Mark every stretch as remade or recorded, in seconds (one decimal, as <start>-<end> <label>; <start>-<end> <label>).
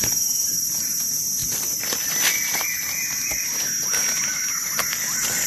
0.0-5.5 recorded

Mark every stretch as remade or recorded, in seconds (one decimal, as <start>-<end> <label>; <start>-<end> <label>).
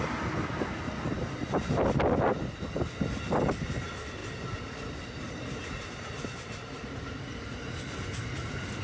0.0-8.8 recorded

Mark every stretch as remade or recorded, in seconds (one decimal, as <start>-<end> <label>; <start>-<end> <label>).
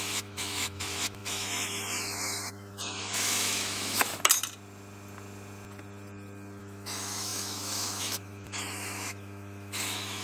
0.0-4.1 remade; 4.1-6.6 recorded; 6.6-10.2 remade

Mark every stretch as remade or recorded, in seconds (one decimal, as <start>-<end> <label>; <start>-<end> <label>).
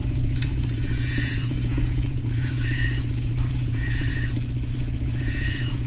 0.0-4.1 remade; 4.1-4.7 recorded; 4.7-5.9 remade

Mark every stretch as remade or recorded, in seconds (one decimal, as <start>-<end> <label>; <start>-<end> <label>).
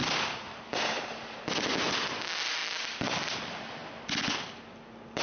0.0-5.2 recorded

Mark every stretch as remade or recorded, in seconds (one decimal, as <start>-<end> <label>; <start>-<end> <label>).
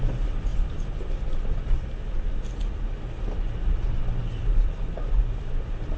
0.0-0.5 remade; 0.5-3.3 recorded; 3.3-6.0 remade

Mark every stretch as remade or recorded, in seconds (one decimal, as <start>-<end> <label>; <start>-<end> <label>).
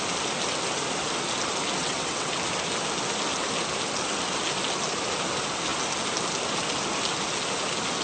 0.0-1.8 recorded; 1.8-2.3 remade; 2.3-8.0 recorded